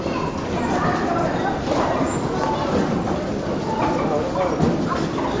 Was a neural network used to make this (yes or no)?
no